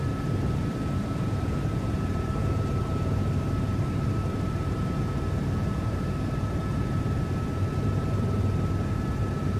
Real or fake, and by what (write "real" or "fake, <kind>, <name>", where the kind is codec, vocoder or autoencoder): fake, vocoder, BigVGAN v2